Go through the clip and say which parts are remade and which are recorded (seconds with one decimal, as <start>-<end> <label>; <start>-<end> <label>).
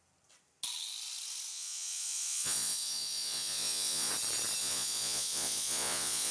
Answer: 0.0-1.5 recorded; 1.5-4.1 remade; 4.1-4.6 recorded; 4.6-6.3 remade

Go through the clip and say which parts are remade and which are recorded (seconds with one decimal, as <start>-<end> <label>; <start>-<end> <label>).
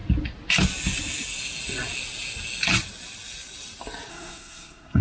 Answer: 0.0-4.1 recorded; 4.1-5.0 remade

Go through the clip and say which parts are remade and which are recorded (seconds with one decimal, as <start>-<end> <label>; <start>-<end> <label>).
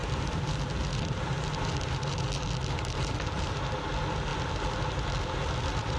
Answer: 0.0-6.0 recorded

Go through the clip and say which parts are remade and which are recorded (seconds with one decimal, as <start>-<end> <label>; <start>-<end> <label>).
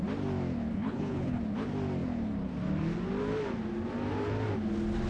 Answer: 0.0-0.7 recorded; 0.7-1.4 remade; 1.4-5.1 recorded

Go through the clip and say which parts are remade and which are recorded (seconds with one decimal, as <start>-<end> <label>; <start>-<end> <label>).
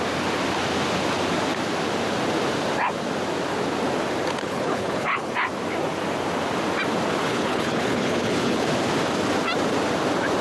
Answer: 0.0-4.4 recorded; 4.4-5.3 remade; 5.3-7.2 recorded; 7.2-8.7 remade; 8.7-10.4 recorded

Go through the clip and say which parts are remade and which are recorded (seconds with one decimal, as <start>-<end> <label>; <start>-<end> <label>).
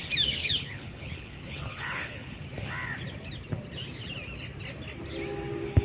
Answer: 0.0-0.4 recorded; 0.4-2.4 remade; 2.4-5.8 recorded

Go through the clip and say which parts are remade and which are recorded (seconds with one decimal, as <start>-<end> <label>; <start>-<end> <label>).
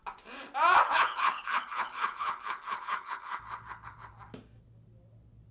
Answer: 0.0-0.8 recorded; 0.8-4.1 remade; 4.1-5.5 recorded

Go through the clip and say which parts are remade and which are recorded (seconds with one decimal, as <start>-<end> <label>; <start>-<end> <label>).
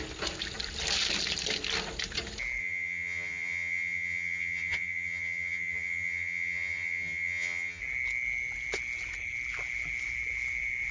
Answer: 0.0-2.6 recorded; 2.6-7.8 remade; 7.8-10.9 recorded